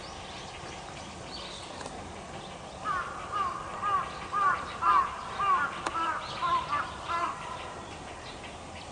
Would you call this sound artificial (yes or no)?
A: no